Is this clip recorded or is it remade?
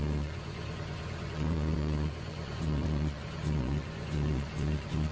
remade